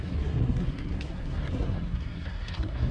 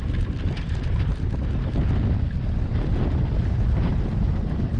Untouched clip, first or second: second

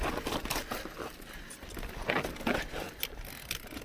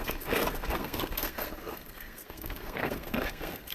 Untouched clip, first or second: first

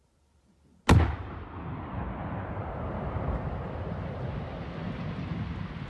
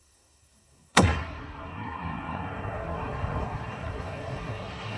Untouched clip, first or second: first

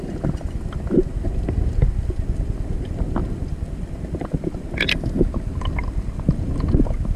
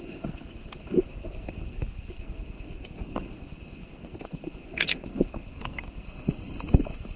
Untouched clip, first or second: first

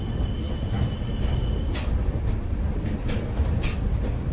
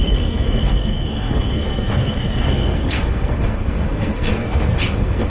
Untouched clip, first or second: first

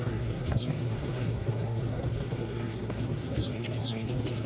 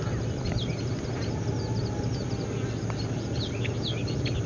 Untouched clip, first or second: second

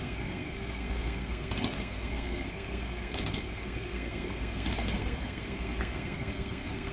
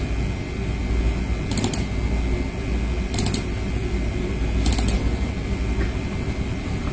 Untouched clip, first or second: second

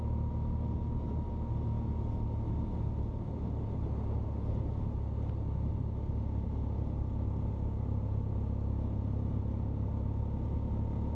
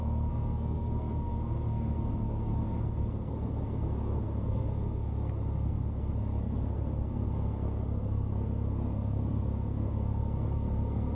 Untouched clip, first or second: first